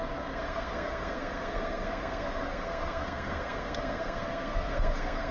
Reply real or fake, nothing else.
fake